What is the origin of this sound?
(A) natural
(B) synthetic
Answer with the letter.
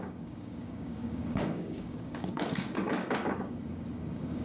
B